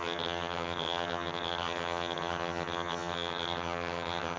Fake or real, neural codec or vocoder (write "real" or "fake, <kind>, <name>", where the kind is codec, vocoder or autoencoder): fake, vocoder, HiFi-GAN